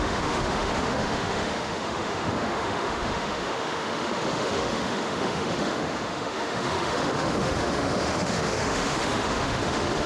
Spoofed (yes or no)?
yes